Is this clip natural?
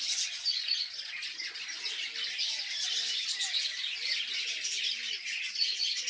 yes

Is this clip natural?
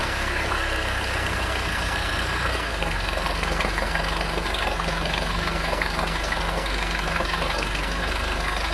no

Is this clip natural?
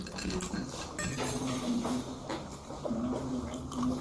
yes